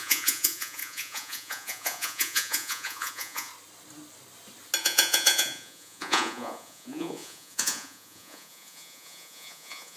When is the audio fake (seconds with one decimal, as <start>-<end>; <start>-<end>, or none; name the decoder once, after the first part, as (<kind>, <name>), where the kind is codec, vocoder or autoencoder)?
0.0-3.5 (vocoder, Vocos); 4.8-10.0